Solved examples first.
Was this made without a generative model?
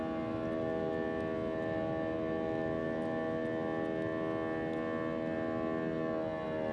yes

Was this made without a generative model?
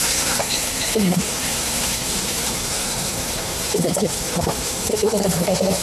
no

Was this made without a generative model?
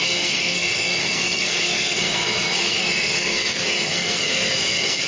no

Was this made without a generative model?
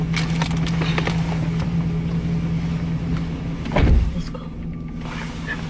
yes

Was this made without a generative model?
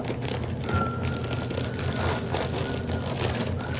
yes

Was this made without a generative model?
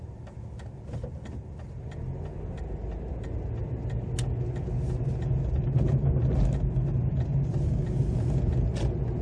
yes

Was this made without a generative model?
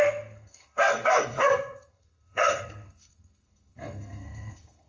no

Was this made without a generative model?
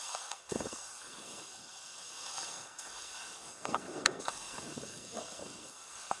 no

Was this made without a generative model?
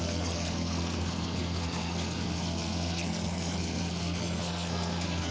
no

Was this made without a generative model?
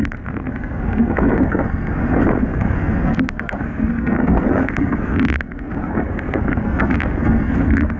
no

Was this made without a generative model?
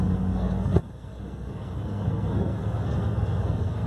no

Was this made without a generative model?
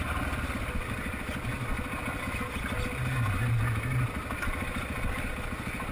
yes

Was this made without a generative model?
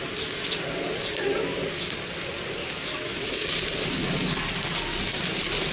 yes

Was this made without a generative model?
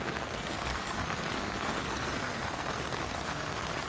no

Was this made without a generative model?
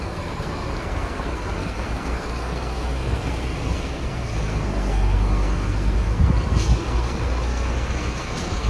no